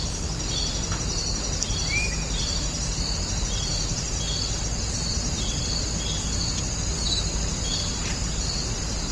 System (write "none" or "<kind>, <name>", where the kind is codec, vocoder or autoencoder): none